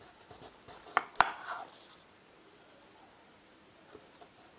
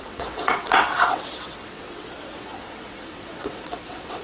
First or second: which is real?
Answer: first